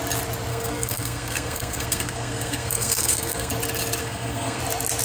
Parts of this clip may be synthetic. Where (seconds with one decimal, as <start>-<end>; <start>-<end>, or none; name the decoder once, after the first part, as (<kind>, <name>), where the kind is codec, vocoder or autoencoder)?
0.5-3.5 (codec, SNAC); 4.0-4.6